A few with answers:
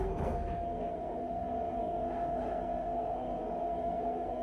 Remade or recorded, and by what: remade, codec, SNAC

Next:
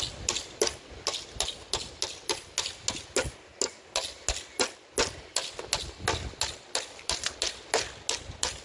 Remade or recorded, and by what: recorded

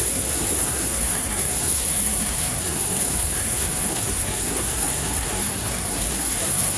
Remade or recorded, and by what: remade, codec, SNAC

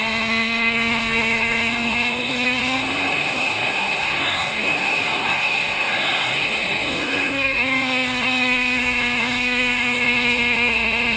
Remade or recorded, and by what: remade, codec, SNAC